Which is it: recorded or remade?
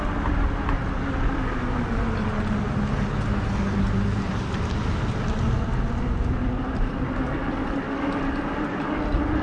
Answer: recorded